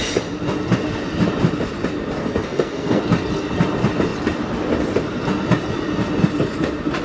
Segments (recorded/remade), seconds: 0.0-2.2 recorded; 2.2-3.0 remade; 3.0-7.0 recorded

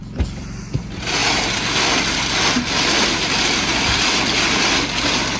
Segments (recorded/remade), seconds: 0.0-5.4 recorded

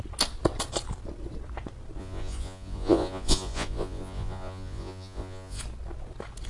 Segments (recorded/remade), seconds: 0.0-2.0 recorded; 2.0-5.6 remade; 5.6-6.5 recorded